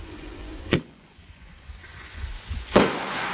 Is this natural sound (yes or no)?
no